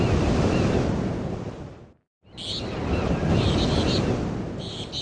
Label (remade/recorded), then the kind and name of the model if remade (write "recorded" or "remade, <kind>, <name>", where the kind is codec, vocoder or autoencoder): recorded